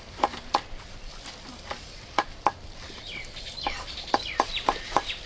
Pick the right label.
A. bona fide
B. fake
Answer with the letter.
A